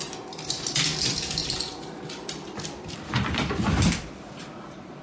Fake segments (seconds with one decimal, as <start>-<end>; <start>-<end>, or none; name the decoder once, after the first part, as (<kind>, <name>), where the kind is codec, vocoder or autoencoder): 1.4-4.4 (vocoder, BigVGAN v2)